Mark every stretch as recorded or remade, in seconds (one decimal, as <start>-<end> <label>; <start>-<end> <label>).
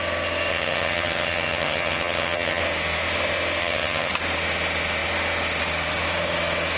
0.0-0.5 recorded; 0.5-2.6 remade; 2.6-3.6 recorded; 3.6-4.1 remade; 4.1-6.8 recorded